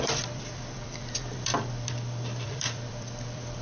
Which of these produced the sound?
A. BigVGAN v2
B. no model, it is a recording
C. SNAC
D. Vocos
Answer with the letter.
A